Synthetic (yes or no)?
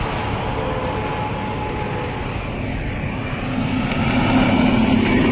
no